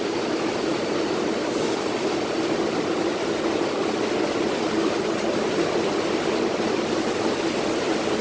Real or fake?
real